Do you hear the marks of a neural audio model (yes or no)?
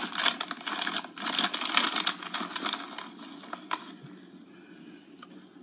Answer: no